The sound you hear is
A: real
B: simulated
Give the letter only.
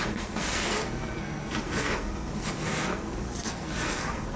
B